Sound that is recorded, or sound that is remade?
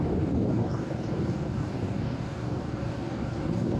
remade